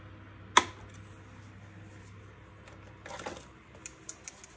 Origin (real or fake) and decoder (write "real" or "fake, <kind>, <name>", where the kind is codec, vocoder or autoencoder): real